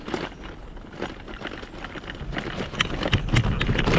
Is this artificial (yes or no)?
no